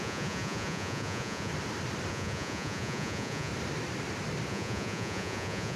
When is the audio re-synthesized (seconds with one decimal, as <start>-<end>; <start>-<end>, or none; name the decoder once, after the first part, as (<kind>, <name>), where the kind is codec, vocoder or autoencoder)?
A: 0.0-1.5 (vocoder, Vocos); 2.1-3.5; 4.5-5.8